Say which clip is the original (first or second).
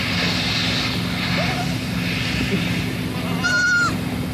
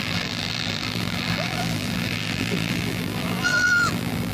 first